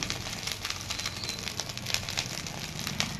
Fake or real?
real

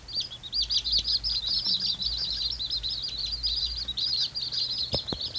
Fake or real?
fake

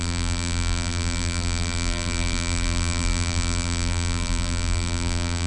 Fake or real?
fake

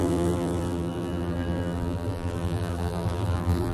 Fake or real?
fake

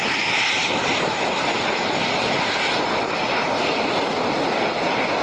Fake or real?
real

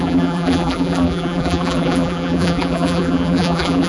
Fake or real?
fake